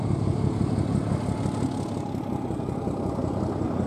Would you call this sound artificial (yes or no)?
no